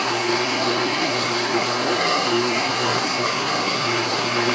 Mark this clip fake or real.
fake